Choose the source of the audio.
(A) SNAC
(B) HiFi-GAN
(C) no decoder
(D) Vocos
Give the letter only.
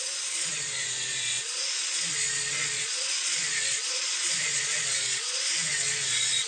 D